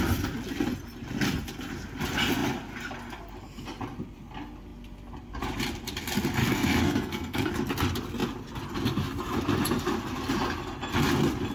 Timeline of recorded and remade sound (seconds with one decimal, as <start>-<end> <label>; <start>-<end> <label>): 0.0-6.4 recorded; 6.4-7.5 remade; 7.5-11.5 recorded